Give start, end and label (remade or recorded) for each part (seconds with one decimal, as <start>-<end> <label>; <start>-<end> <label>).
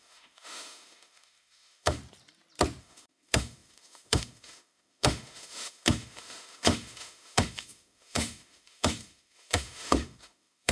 0.0-2.0 remade; 2.0-2.8 recorded; 2.8-10.7 remade